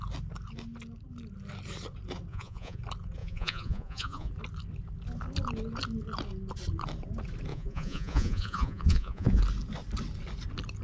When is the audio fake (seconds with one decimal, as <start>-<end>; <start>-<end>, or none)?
2.3-2.8; 3.2-4.3; 7.5-9.4